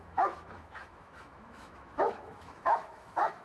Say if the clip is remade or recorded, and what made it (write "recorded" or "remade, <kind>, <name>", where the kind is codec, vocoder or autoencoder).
remade, autoencoder, DAC-VAE